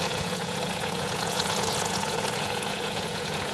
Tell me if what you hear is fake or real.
fake